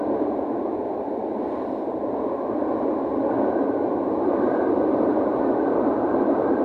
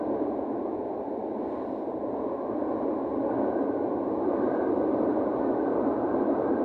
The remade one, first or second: first